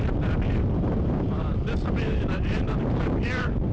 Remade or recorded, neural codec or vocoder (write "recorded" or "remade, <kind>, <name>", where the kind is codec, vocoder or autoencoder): remade, vocoder, BigVGAN v2